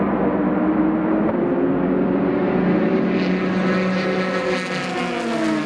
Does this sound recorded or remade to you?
recorded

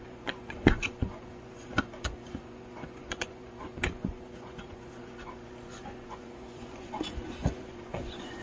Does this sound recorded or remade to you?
remade